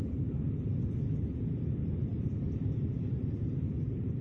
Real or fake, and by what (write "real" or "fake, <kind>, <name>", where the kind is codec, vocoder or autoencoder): fake, vocoder, BigVGAN v2